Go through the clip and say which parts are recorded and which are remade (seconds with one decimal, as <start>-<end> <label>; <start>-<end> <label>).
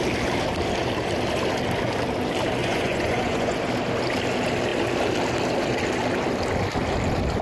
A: 0.0-2.6 recorded; 2.6-3.6 remade; 3.6-7.4 recorded